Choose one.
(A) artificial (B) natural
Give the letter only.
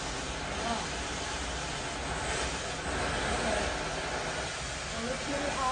B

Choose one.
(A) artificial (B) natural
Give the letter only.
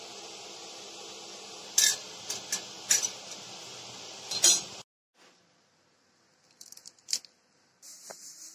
B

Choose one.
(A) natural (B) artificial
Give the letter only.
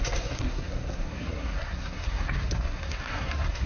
B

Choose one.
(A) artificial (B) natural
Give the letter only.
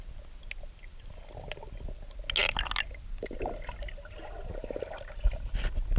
B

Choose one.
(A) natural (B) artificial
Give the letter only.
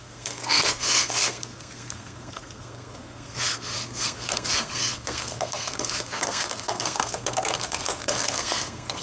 B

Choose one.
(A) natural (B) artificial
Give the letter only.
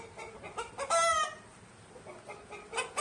A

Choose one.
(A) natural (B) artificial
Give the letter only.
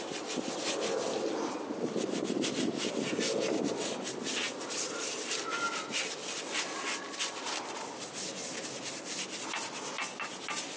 A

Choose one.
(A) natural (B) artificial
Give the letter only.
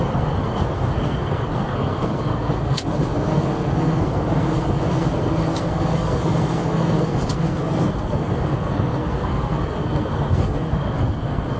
B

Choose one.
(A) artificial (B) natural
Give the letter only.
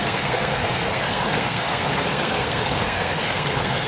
A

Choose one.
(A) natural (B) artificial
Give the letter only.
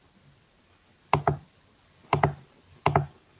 A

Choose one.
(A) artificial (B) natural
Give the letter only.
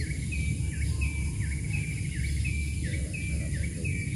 B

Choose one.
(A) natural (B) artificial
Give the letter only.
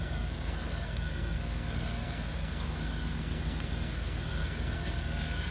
B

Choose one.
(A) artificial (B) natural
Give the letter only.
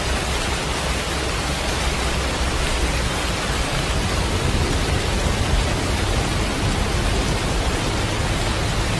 B